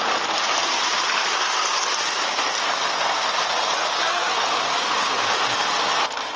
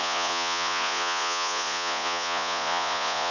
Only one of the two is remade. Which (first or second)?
second